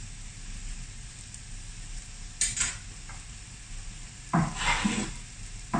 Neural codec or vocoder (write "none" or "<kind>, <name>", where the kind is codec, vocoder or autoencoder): none